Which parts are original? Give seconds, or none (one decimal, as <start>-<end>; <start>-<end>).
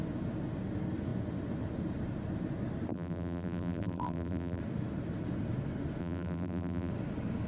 0.0-2.9; 4.6-6.0; 6.9-7.5